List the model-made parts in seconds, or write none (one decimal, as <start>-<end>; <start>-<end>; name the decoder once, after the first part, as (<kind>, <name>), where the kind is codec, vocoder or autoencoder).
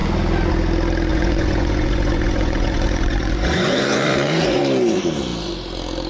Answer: 1.1-4.6 (vocoder, Vocos)